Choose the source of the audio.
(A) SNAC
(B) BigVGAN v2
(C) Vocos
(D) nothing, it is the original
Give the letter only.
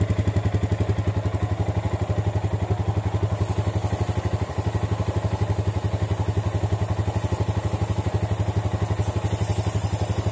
D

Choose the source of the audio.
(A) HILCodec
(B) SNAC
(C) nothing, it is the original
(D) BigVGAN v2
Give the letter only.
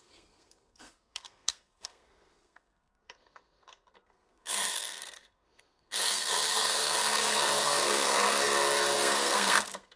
B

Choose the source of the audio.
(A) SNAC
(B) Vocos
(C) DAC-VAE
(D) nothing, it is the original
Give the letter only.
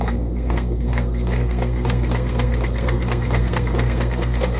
A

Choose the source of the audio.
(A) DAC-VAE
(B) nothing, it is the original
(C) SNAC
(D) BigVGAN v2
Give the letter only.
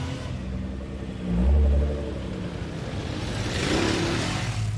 B